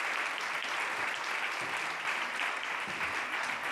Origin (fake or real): fake